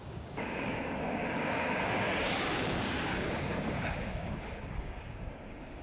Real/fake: fake